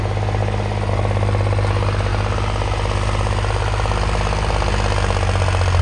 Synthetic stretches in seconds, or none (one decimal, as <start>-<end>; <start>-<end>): none